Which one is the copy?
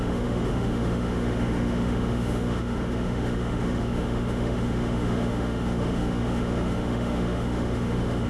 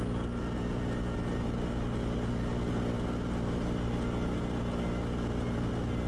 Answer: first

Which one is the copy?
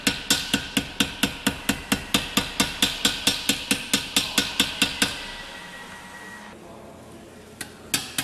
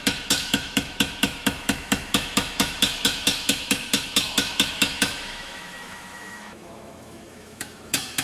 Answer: second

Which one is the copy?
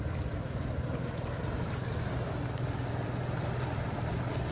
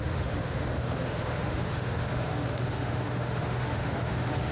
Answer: second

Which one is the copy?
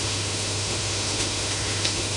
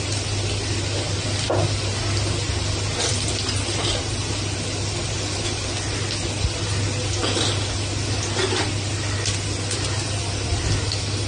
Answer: first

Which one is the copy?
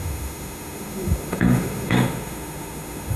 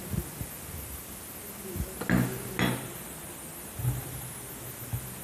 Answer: first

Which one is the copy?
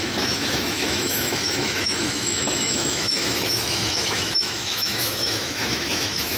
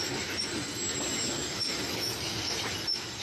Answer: first